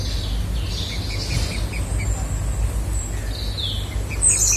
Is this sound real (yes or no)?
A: yes